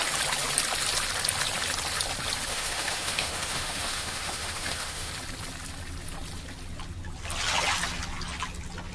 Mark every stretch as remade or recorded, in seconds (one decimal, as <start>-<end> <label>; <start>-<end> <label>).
0.0-2.5 recorded; 2.5-5.1 remade; 5.1-8.9 recorded